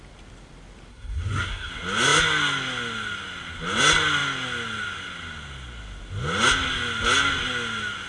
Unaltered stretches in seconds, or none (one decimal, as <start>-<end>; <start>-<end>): 0.0-0.9; 1.7-8.1